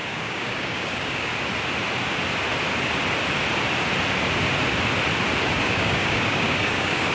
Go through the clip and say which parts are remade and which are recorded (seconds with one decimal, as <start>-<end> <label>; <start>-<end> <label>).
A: 0.0-1.3 remade; 1.3-5.6 recorded; 5.6-7.1 remade